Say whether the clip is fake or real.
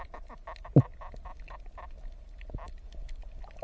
real